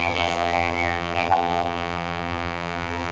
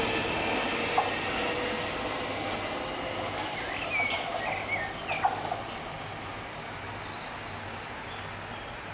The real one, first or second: second